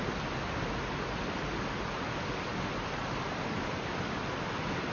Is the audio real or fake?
real